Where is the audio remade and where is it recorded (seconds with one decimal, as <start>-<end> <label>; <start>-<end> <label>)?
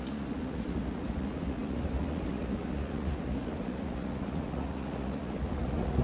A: 0.0-6.0 remade